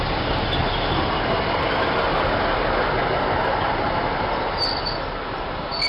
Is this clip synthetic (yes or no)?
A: no